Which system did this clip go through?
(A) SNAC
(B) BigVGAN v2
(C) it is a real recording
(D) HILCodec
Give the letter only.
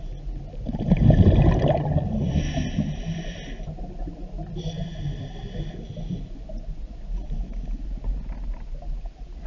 C